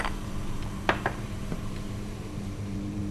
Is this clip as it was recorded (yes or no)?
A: no